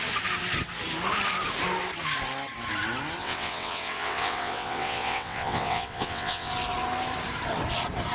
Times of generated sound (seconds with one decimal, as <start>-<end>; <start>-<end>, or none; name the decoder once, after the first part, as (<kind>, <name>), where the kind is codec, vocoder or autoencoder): 3.2-6.5 (vocoder, WaveNeXt)